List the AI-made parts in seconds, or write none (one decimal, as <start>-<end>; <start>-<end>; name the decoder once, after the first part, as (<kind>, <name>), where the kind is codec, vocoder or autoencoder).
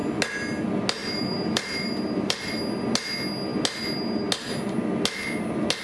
1.0-2.6 (vocoder, BigVGAN v2)